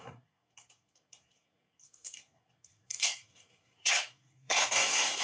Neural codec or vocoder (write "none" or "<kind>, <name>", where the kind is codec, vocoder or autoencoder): codec, SNAC